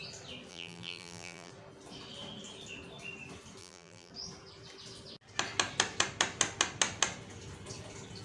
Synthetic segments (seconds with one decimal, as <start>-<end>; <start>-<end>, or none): 0.5-1.5; 3.6-4.1